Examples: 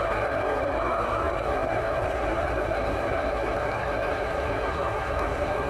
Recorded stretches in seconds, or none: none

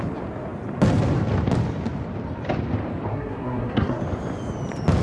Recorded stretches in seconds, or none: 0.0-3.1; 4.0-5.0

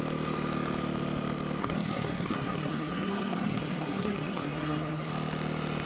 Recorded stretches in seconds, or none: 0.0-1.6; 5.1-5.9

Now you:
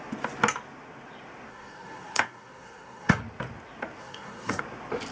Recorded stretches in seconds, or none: 0.0-1.5; 3.2-4.0; 4.6-5.1